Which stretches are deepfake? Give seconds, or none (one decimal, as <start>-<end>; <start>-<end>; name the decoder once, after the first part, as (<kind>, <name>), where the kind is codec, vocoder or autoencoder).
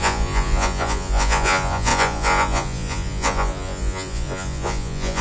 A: 0.0-5.2 (vocoder, Vocos)